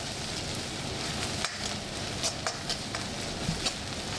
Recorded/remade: recorded